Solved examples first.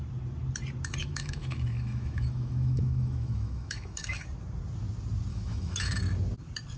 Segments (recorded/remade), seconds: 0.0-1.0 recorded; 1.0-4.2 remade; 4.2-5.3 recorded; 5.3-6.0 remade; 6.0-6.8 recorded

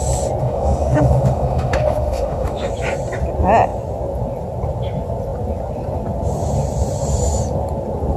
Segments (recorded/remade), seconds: 0.0-0.4 recorded; 0.4-2.7 remade; 2.7-8.2 recorded

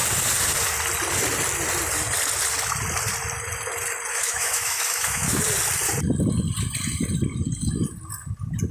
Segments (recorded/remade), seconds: 0.0-4.1 recorded; 4.1-5.4 remade; 5.4-8.7 recorded

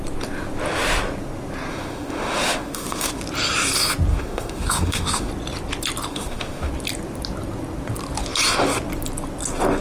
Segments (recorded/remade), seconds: 0.0-1.7 recorded; 1.7-3.2 remade; 3.2-4.1 recorded; 4.1-5.3 remade; 5.3-6.1 recorded; 6.1-6.7 remade; 6.7-9.8 recorded

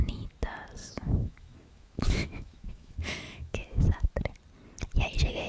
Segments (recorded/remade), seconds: 0.0-0.8 recorded; 0.8-4.1 remade; 4.1-5.5 recorded

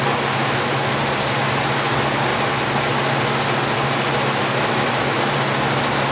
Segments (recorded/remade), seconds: 0.0-0.4 recorded; 0.4-1.0 remade; 1.0-6.1 recorded

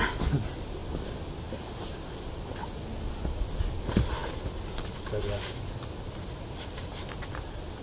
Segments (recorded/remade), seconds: 0.0-7.8 recorded